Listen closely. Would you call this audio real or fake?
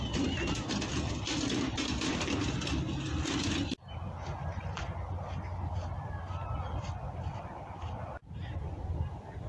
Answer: real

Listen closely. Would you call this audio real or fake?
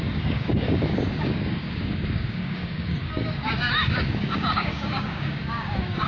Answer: fake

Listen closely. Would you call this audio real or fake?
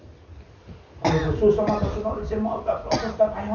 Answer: real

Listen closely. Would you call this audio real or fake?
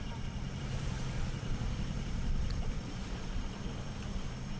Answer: fake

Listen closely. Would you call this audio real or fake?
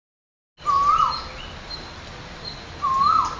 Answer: real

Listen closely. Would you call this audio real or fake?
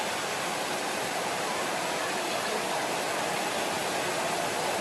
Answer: real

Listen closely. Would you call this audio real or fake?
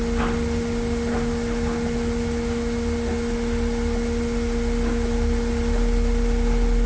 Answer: real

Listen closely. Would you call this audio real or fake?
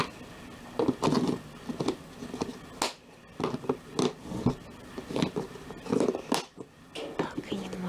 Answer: real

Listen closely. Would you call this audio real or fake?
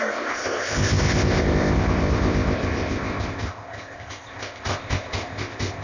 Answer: fake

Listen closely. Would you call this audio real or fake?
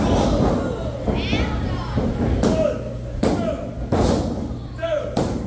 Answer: real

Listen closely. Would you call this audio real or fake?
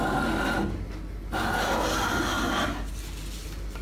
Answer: real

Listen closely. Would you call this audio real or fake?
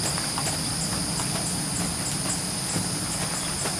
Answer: real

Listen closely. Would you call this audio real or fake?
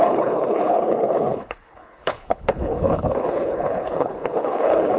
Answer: fake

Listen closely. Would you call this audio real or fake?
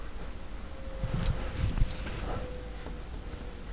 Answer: real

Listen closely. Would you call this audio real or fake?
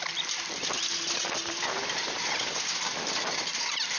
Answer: real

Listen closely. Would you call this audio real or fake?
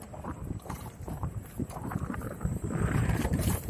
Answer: fake